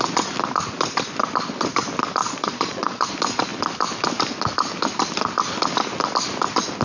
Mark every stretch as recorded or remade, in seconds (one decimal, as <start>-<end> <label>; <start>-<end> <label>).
0.0-2.2 recorded; 2.2-3.1 remade; 3.1-6.8 recorded